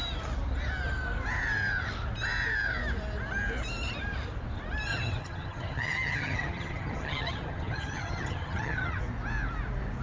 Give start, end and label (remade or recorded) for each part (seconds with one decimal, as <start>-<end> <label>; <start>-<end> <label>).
0.0-4.9 recorded; 4.9-9.0 remade; 9.0-10.0 recorded